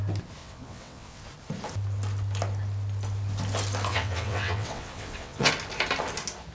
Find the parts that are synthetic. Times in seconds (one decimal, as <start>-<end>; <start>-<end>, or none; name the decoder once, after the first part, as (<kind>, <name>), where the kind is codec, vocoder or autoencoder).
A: 0.4-1.2 (vocoder, WaveNeXt); 3.9-5.5